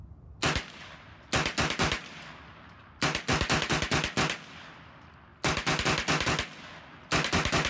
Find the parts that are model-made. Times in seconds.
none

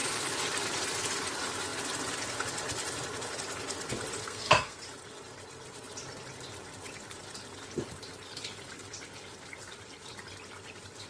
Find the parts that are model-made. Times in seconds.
4.2-4.8 (codec, SNAC)